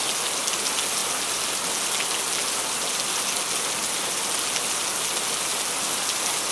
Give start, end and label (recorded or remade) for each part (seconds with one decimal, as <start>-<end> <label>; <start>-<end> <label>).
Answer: 0.0-6.5 recorded